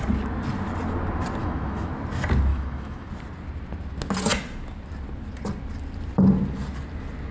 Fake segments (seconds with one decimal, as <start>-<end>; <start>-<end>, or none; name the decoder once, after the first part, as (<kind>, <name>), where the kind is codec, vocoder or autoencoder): 1.4-1.9 (autoencoder, DAC-VAE); 2.5-3.1